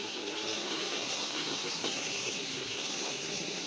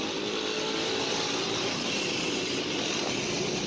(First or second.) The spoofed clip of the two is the first